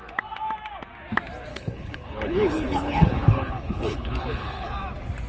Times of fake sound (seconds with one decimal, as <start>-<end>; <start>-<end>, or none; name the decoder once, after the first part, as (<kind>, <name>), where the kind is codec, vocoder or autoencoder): 1.5-4.7 (codec, HILCodec)